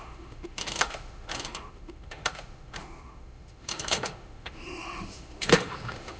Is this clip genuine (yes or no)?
no